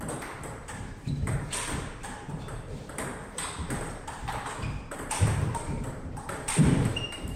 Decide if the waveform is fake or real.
fake